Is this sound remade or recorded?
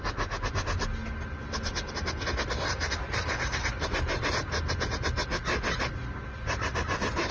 recorded